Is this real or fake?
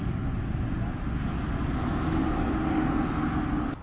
real